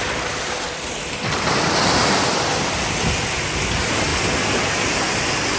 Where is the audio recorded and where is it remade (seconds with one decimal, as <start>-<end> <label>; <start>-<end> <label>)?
0.0-5.6 recorded